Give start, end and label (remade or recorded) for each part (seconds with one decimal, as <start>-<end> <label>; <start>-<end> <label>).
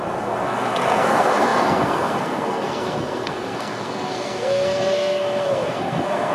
0.0-6.3 remade